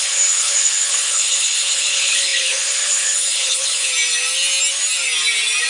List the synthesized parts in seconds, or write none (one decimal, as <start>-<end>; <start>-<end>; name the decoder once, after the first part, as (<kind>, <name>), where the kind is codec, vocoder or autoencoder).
0.0-3.9 (codec, HILCodec)